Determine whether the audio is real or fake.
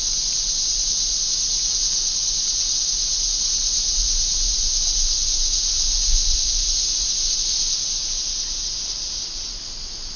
real